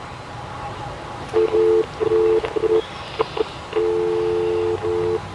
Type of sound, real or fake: real